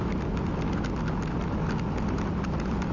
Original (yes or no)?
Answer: yes